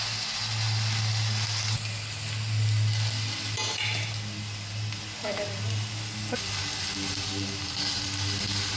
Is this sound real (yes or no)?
yes